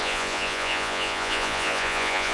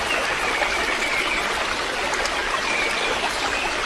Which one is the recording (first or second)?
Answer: second